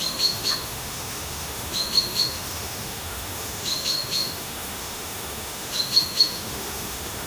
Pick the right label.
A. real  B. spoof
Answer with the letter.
B